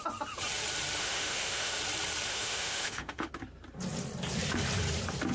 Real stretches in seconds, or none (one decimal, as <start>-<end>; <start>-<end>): 0.0-1.0; 1.8-2.3; 3.3-5.3